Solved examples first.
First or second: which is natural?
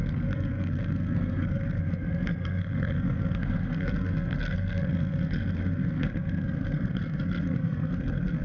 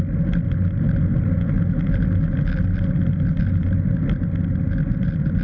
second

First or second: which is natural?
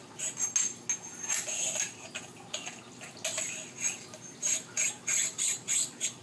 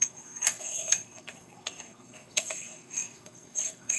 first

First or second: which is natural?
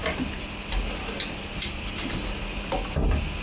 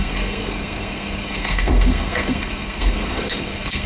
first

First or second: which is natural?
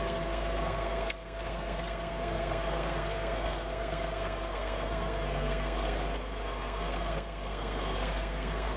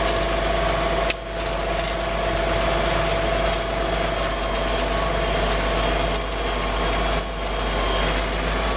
second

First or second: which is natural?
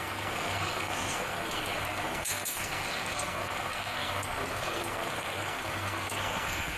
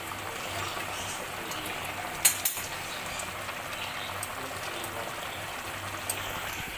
second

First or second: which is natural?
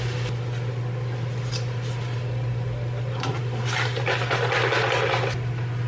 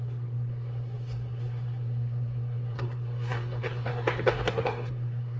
first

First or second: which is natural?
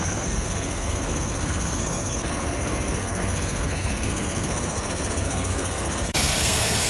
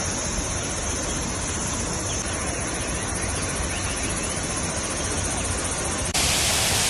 second